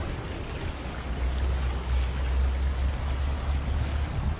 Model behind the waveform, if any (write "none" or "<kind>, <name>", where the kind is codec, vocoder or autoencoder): none